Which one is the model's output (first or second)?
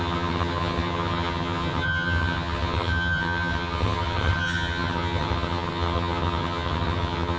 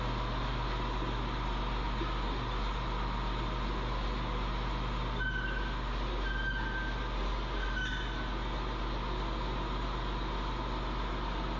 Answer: first